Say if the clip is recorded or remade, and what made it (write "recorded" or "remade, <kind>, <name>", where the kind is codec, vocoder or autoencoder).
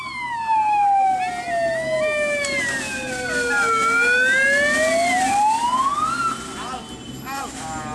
recorded